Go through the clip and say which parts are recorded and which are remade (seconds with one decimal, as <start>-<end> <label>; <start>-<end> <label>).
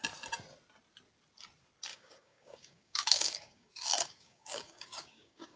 0.0-1.9 recorded; 1.9-5.6 remade